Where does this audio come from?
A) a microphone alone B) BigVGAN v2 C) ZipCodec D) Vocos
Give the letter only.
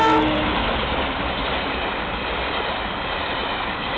A